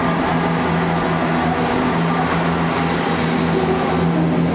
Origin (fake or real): real